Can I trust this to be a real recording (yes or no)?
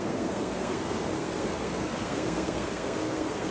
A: no